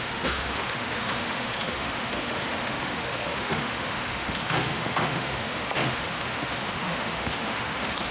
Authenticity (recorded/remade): remade